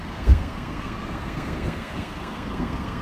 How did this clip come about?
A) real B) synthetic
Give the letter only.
B